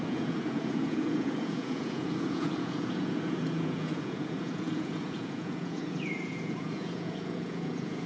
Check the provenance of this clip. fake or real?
fake